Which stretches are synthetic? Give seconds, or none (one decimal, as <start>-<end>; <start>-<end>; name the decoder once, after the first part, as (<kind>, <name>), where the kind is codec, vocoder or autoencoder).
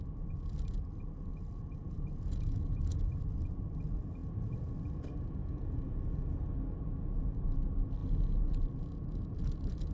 1.3-3.2 (vocoder, Vocos); 4.2-4.7; 5.4-6.1; 8.0-8.6